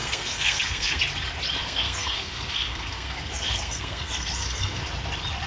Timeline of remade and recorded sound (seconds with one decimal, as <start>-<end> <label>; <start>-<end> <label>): 0.0-1.0 remade; 1.0-1.6 recorded; 1.6-4.8 remade; 4.8-5.5 recorded